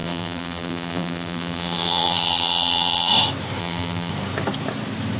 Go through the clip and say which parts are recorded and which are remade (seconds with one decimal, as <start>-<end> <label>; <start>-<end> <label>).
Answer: 0.0-3.1 remade; 3.1-3.6 recorded; 3.6-4.1 remade; 4.1-5.2 recorded

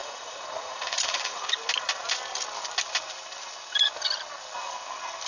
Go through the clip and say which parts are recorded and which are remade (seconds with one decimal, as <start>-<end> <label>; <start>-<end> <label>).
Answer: 0.0-1.5 remade; 1.5-5.3 recorded

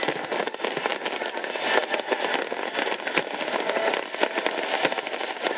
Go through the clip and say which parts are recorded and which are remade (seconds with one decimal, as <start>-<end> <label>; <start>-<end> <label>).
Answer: 0.0-0.9 recorded; 0.9-3.3 remade; 3.3-5.6 recorded